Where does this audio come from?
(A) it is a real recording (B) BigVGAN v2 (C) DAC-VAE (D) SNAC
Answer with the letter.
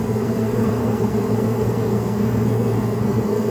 D